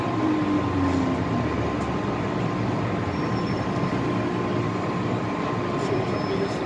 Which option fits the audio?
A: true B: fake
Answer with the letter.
A